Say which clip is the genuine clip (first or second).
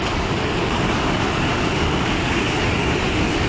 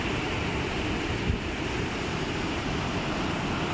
second